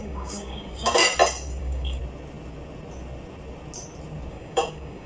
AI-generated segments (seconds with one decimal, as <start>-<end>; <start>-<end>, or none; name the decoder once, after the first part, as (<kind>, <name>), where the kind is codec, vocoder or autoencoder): 0.0-1.0 (codec, DAC); 1.6-2.0; 4.3-5.1